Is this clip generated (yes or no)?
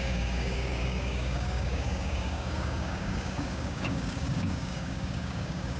yes